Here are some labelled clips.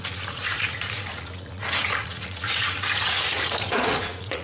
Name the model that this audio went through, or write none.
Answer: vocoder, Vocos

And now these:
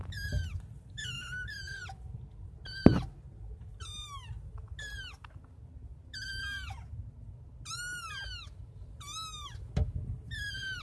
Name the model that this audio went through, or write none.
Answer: none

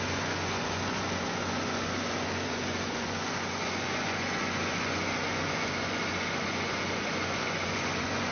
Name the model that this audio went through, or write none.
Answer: vocoder, Vocos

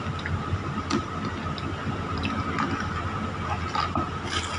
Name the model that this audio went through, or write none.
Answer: none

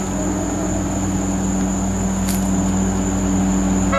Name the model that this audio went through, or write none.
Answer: none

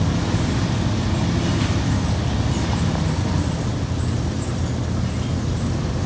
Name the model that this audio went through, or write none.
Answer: none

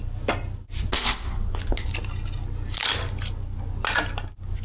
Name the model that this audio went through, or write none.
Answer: none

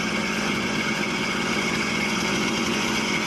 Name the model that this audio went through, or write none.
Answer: vocoder, Vocos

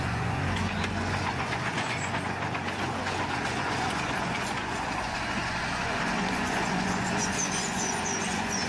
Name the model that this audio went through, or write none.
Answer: vocoder, Vocos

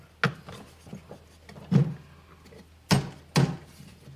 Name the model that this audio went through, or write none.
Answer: none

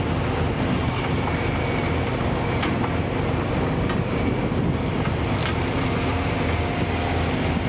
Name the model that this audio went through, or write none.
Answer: none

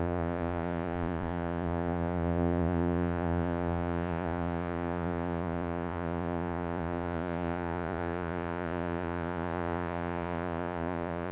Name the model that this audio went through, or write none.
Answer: vocoder, Vocos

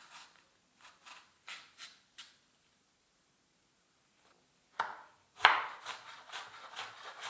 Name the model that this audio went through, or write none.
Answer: none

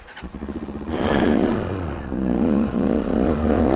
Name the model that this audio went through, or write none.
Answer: vocoder, Vocos